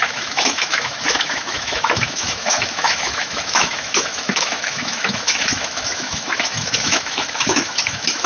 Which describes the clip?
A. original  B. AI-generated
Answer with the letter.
B